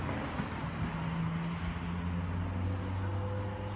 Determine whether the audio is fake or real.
real